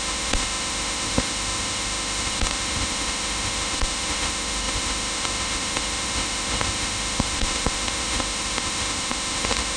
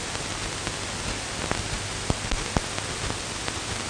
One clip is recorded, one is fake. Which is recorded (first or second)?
second